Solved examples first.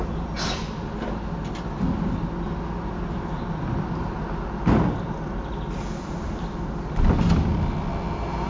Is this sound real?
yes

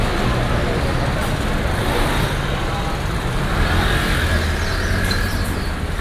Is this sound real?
yes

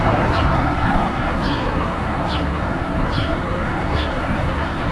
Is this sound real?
no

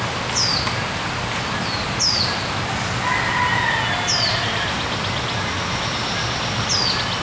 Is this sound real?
yes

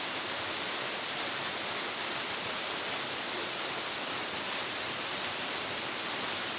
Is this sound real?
yes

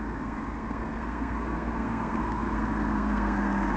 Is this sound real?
no